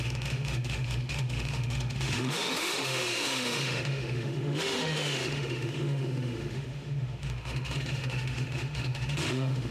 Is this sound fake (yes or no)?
yes